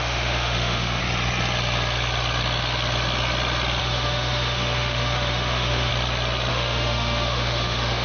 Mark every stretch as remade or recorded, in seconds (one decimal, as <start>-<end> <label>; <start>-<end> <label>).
0.0-1.0 remade; 1.0-3.8 recorded; 3.8-5.9 remade; 5.9-6.5 recorded; 6.5-8.0 remade